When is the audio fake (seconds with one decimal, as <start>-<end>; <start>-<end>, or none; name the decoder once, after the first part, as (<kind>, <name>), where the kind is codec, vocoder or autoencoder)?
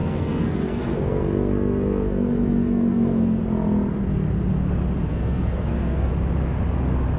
0.0-3.4 (codec, SNAC); 5.1-6.1